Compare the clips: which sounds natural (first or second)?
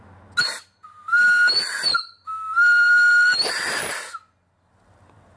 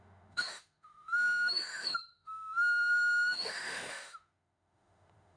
first